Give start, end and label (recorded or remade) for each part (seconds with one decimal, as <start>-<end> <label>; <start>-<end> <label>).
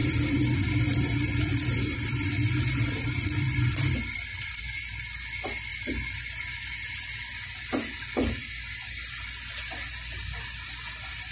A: 0.0-4.6 remade; 4.6-11.3 recorded